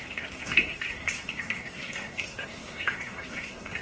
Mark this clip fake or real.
fake